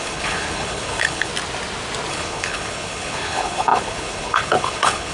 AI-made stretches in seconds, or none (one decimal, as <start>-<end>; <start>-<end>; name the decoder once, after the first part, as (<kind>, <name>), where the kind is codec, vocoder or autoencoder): 0.0-1.3 (codec, HILCodec); 2.1-5.1